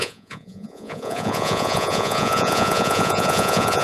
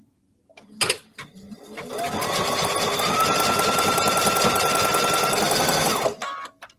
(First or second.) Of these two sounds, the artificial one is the first